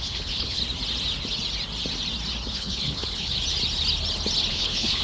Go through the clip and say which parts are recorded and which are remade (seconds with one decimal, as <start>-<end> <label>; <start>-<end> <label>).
0.0-0.6 remade; 0.6-2.5 recorded; 2.5-3.3 remade; 3.3-4.5 recorded; 4.5-5.0 remade